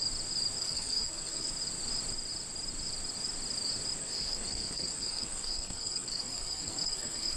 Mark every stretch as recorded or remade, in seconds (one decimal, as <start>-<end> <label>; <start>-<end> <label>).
0.0-0.6 recorded; 0.6-1.5 remade; 1.5-4.0 recorded; 4.0-7.4 remade

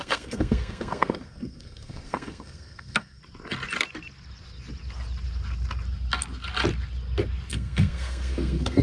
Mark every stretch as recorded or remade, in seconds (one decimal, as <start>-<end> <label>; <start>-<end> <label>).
0.0-3.2 remade; 3.2-7.5 recorded; 7.5-8.8 remade